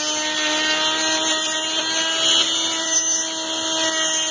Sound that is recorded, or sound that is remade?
recorded